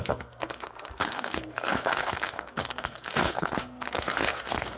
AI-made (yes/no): yes